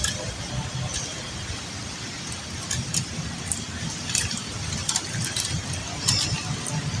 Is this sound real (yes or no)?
yes